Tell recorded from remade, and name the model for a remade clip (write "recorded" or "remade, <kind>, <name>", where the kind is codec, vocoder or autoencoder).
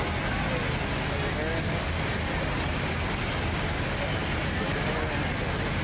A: recorded